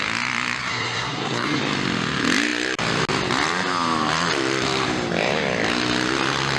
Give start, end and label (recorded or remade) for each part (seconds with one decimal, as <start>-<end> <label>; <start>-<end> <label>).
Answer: 0.0-0.6 recorded; 0.6-1.6 remade; 1.6-6.6 recorded